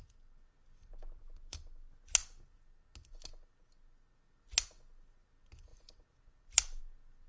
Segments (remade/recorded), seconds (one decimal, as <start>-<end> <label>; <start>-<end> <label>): 0.0-5.7 recorded; 5.7-6.8 remade; 6.8-7.3 recorded